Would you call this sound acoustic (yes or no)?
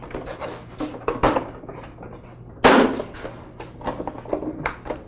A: yes